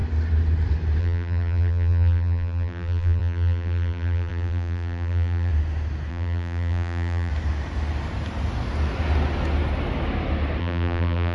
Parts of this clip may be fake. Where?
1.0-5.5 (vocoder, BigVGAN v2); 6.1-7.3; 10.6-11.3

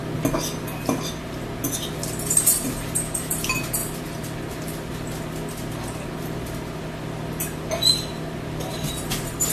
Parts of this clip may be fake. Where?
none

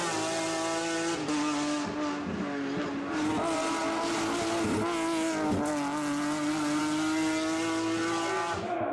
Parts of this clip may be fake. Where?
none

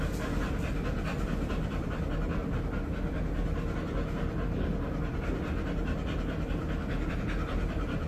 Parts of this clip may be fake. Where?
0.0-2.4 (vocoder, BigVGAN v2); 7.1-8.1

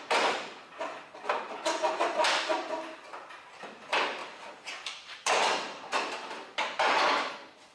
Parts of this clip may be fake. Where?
4.2-7.3 (vocoder, BigVGAN v2)